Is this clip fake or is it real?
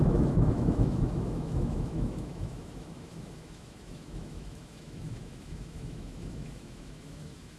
fake